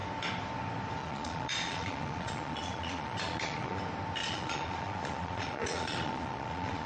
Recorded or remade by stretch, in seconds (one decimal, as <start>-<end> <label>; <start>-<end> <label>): 0.0-1.0 recorded; 1.0-3.8 remade; 3.8-4.2 recorded; 4.2-6.9 remade